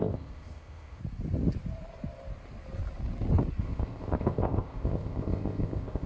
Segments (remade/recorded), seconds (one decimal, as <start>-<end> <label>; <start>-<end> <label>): 0.0-1.0 remade; 1.0-3.6 recorded; 3.6-6.1 remade